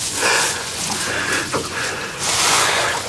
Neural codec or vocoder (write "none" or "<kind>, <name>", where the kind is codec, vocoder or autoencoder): vocoder, Vocos